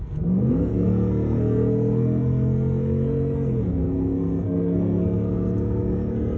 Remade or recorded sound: remade